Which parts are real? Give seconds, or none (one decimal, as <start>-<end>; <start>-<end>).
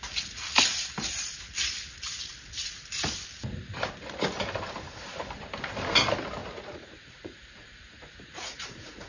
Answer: 0.0-6.4